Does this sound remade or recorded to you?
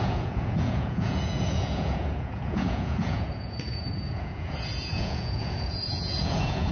remade